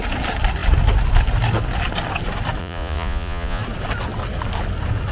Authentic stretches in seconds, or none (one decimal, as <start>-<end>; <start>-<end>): 0.0-2.6; 3.6-5.1